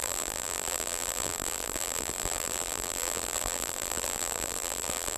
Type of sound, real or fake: fake